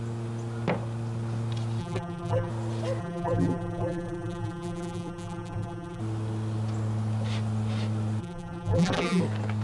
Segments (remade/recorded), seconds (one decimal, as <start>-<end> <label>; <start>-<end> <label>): 0.0-1.8 recorded; 1.8-2.5 remade; 2.5-3.0 recorded; 3.0-6.0 remade; 6.0-8.2 recorded; 8.2-9.2 remade; 9.2-9.6 recorded